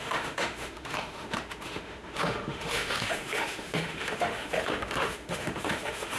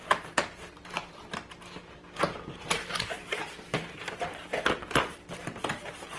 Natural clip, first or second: second